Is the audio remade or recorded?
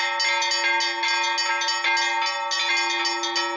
recorded